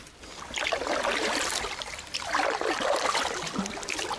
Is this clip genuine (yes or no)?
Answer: yes